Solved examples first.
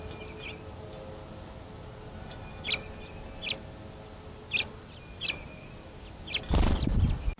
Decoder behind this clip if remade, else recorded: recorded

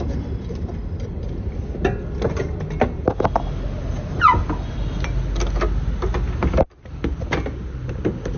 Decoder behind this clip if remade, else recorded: recorded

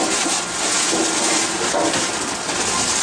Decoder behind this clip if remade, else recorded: recorded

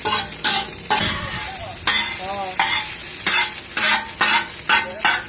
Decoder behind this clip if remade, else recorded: recorded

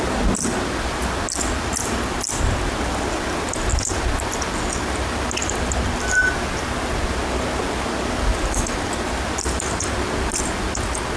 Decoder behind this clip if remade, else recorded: recorded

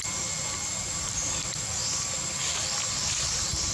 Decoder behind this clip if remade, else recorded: recorded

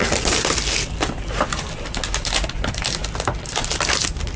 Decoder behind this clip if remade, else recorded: recorded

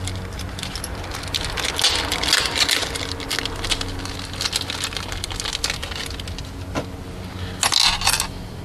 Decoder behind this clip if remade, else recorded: recorded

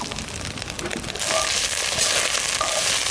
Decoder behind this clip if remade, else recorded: recorded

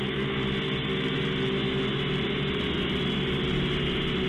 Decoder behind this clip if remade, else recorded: recorded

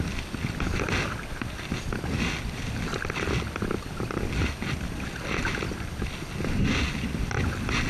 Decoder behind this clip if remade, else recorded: recorded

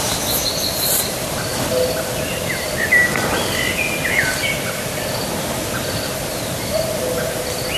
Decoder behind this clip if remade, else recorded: recorded